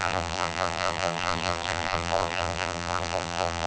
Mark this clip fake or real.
fake